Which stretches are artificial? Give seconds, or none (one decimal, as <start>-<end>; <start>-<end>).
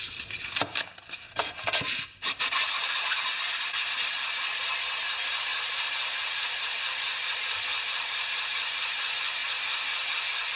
5.5-6.8